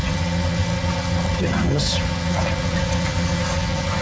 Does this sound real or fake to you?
fake